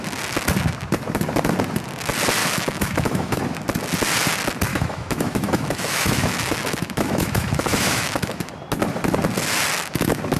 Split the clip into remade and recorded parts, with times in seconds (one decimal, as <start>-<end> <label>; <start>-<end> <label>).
0.0-2.4 recorded; 2.4-3.4 remade; 3.4-4.7 recorded; 4.7-8.5 remade; 8.5-10.4 recorded